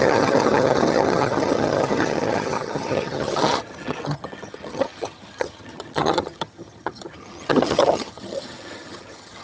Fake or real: fake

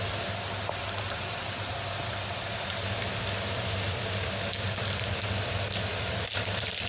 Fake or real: real